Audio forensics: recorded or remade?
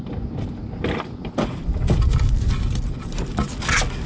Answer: recorded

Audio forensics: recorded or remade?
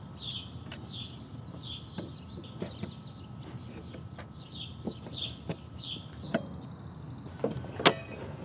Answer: recorded